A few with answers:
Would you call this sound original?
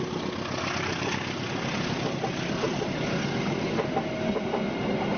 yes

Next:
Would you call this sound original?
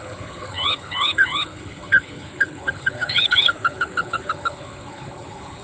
no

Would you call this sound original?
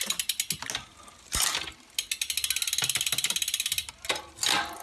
yes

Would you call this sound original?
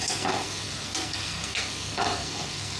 no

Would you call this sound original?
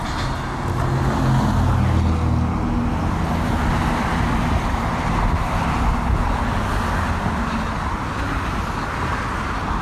yes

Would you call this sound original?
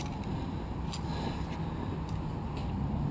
yes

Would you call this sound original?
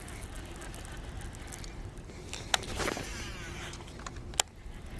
yes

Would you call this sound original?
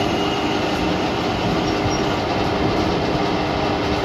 yes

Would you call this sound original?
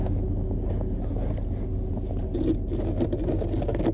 yes